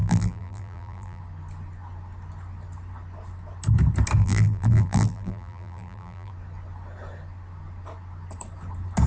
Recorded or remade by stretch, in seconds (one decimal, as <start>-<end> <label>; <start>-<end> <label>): 0.0-1.2 remade; 1.2-4.2 recorded; 4.2-6.3 remade; 6.3-9.1 recorded